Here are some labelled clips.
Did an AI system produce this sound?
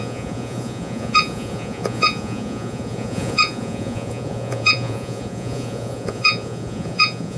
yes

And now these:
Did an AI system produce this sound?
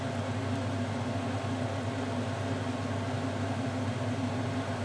no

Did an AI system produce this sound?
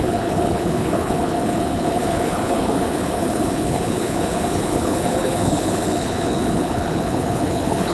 yes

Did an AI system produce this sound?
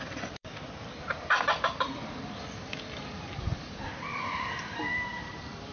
yes